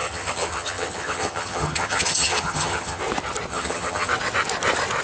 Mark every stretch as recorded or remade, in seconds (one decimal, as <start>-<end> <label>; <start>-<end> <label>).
0.0-3.0 remade; 3.0-3.5 recorded; 3.5-4.1 remade; 4.1-5.0 recorded